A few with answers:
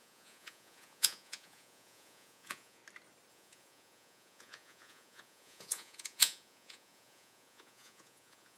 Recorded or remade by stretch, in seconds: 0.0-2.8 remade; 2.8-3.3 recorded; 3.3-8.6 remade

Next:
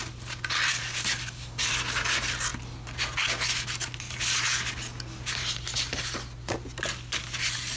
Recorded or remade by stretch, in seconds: 0.0-0.7 recorded; 0.7-1.7 remade; 1.7-7.8 recorded